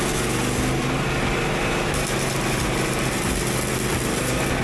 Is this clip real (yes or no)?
yes